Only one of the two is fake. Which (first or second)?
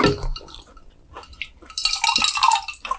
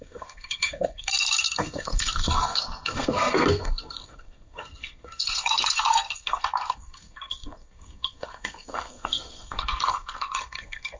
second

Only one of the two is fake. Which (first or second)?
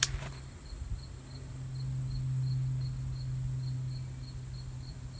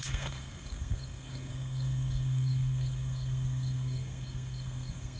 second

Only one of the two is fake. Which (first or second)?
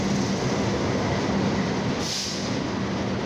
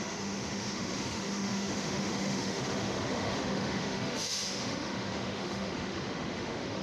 second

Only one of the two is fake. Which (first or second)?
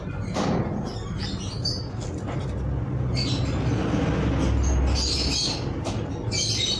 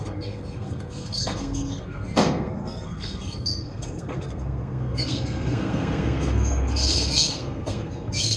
second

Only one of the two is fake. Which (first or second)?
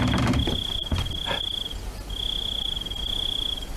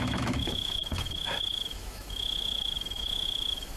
second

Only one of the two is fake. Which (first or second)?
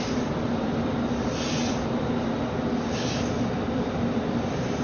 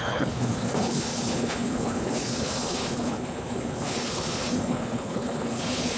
second